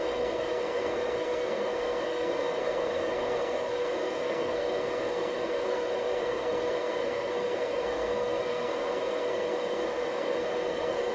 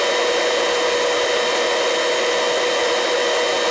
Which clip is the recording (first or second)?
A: second